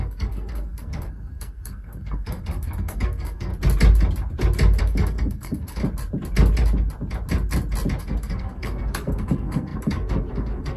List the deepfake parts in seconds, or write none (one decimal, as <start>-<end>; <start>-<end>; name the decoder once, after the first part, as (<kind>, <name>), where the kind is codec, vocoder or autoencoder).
0.0-3.5 (codec, SNAC); 4.8-5.8; 8.0-10.8